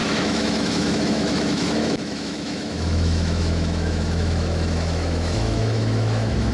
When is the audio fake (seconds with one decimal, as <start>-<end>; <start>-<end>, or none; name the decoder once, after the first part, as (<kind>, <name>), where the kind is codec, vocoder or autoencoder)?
0.0-6.5 (autoencoder, DAC-VAE)

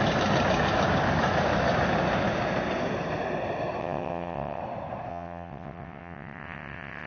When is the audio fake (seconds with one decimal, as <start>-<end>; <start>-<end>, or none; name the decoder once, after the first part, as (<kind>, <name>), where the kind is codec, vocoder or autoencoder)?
3.8-4.6 (vocoder, WaveNeXt); 5.1-7.1

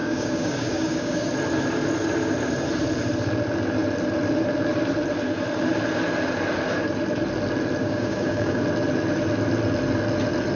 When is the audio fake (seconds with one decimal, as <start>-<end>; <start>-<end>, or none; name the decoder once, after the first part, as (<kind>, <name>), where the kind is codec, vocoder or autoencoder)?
0.0-1.3 (codec, DAC); 7.8-8.6

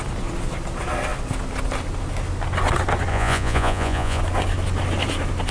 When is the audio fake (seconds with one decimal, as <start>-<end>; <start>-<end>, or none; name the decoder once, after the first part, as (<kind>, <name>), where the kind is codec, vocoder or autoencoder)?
3.1-4.2 (vocoder, Vocos)

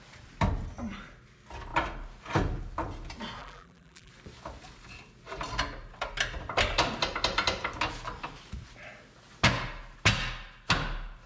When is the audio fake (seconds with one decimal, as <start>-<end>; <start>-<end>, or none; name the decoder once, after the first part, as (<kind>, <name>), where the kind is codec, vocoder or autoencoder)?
3.4-4.1 (vocoder, BigVGAN v2)

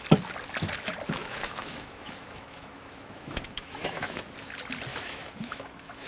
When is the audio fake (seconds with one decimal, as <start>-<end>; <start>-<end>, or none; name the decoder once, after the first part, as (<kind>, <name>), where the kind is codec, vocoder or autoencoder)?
1.2-4.2 (autoencoder, DAC-VAE); 4.9-6.1

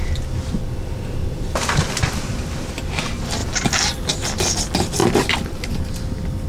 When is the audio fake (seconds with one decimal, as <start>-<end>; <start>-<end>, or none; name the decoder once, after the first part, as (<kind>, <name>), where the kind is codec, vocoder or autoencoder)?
1.2-2.5 (vocoder, BigVGAN v2); 5.0-5.7

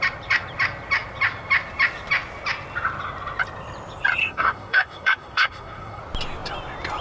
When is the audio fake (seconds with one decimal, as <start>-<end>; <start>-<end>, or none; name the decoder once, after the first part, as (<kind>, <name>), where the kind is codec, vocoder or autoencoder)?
4.2-6.0 (codec, SNAC)